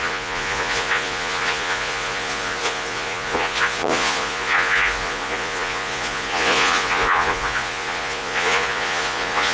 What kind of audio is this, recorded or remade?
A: remade